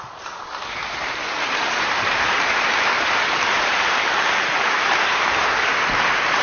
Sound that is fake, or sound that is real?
fake